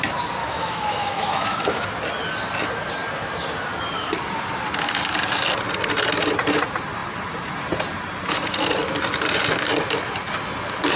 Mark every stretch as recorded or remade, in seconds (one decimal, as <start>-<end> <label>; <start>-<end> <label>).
0.0-0.4 recorded; 0.4-1.8 remade; 1.8-11.0 recorded